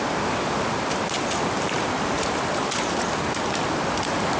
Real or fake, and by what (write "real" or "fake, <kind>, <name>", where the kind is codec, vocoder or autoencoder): real